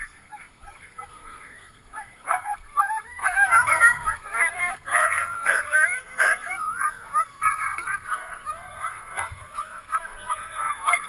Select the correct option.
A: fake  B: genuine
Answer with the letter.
A